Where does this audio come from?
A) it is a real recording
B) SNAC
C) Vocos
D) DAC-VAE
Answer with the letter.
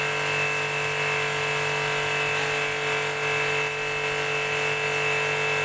A